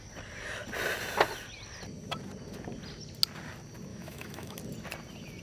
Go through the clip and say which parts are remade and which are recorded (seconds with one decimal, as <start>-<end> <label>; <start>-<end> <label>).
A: 0.0-3.9 recorded; 3.9-4.6 remade; 4.6-5.4 recorded